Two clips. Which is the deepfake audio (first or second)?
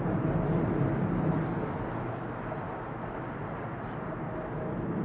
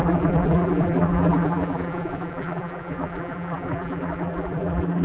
second